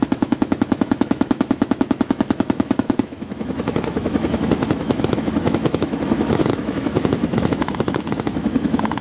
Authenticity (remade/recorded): remade